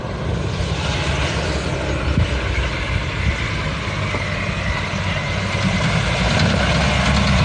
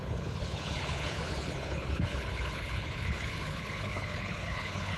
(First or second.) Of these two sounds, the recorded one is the first